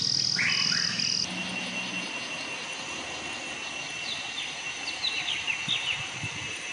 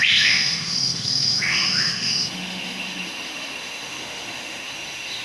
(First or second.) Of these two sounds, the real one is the first